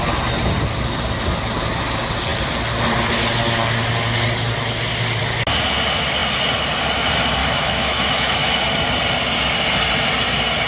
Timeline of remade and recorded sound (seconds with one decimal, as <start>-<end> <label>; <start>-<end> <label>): 0.0-7.4 recorded; 7.4-8.5 remade; 8.5-10.7 recorded